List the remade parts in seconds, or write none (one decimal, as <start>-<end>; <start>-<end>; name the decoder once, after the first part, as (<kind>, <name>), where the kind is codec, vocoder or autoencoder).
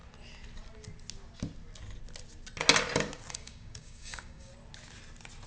3.3-4.5 (codec, DAC)